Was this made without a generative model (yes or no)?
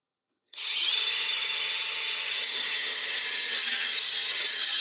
no